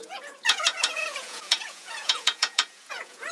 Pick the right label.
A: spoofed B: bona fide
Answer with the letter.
A